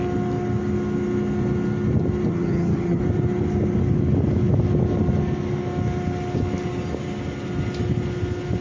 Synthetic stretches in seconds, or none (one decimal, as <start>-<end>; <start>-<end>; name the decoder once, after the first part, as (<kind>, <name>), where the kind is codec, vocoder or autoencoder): 2.3-3.0 (vocoder, HiFi-GAN)

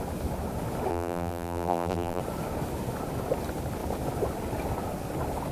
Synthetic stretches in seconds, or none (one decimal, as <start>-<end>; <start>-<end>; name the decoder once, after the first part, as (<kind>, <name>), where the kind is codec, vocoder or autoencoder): 0.9-2.2 (vocoder, BigVGAN v2)

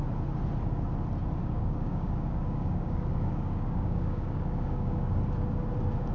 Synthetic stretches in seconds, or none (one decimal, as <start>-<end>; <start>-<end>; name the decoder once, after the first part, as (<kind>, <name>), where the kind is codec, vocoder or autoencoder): 1.4-5.1 (codec, DAC)

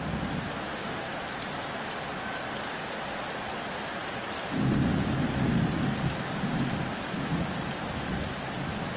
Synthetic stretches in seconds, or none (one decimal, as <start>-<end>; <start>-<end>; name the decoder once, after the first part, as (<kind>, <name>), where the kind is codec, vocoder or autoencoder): 0.6-1.1 (autoencoder, DAC-VAE)

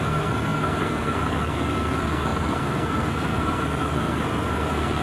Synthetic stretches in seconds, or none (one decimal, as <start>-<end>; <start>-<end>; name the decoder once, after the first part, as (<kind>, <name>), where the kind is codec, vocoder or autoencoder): 0.0-5.0 (codec, SNAC)

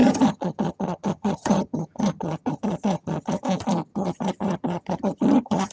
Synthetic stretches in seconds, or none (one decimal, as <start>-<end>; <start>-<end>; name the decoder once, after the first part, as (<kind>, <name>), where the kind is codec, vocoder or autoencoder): 0.0-3.4 (vocoder, HiFi-GAN); 3.9-5.7

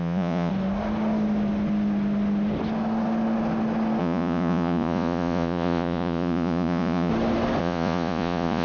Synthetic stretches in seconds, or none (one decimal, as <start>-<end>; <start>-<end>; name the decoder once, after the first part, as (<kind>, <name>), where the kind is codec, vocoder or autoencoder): 0.0-0.5 (vocoder, Vocos); 4.0-7.1; 7.6-8.6